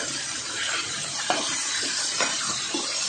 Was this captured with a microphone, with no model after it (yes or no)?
no